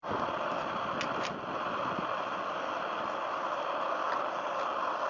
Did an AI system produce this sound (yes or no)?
no